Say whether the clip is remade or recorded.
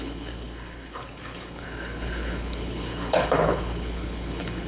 remade